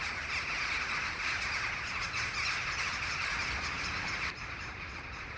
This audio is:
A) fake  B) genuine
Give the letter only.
B